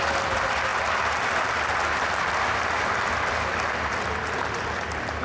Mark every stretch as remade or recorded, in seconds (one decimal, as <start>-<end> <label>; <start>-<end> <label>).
0.0-5.2 recorded